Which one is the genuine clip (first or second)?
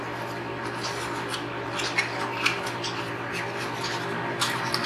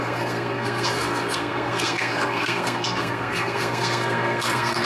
first